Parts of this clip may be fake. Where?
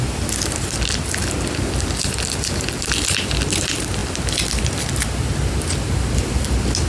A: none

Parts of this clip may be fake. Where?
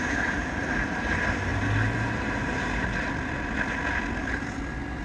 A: none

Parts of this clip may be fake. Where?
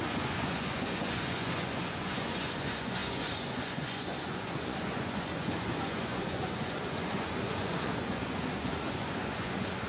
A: 0.0-9.9 (vocoder, Vocos)